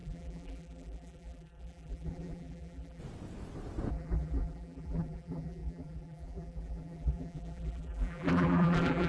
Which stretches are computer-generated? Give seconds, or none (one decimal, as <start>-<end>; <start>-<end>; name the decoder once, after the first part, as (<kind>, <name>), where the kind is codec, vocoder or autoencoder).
0.0-3.0 (vocoder, BigVGAN v2); 3.9-9.1